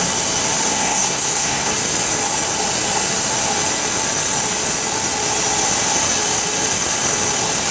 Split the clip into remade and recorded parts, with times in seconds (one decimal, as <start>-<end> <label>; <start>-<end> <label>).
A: 0.0-0.7 recorded; 0.7-1.7 remade; 1.7-7.7 recorded